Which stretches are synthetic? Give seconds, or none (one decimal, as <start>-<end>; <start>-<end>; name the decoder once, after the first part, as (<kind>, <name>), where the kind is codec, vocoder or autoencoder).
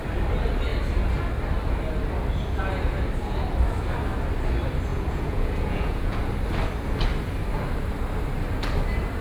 4.9-6.3 (vocoder, Vocos)